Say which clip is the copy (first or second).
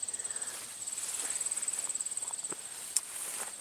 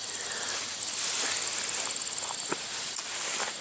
first